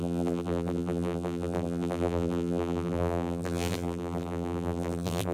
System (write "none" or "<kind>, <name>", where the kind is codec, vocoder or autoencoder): vocoder, BigVGAN v2